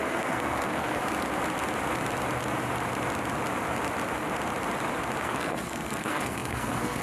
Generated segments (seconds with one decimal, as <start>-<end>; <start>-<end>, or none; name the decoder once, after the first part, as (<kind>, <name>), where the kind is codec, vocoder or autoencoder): 0.0-1.0 (codec, SNAC); 5.2-7.0